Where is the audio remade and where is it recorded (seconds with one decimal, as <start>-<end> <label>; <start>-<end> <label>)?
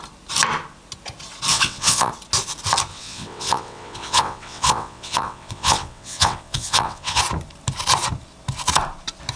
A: 0.0-1.5 recorded; 1.5-2.1 remade; 2.1-2.9 recorded; 2.9-7.2 remade; 7.2-9.4 recorded